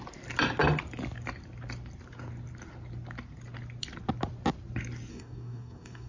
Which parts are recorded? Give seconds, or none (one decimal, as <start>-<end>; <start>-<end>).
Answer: 0.0-5.1